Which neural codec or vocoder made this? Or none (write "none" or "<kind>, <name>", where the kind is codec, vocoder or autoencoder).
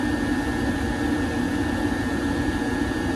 none